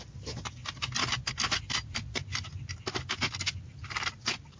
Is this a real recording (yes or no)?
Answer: yes